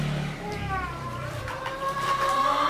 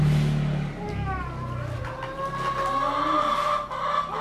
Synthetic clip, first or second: first